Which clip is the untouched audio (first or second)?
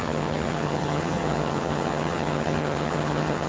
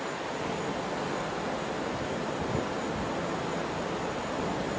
second